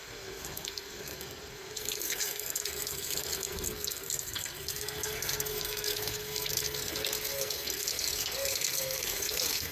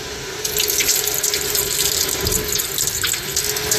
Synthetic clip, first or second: first